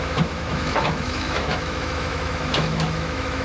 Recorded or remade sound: remade